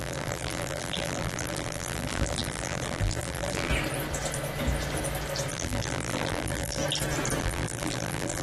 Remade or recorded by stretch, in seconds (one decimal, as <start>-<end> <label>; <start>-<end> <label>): 0.0-3.7 remade; 3.7-5.5 recorded; 5.5-6.8 remade; 6.8-7.4 recorded; 7.4-8.4 remade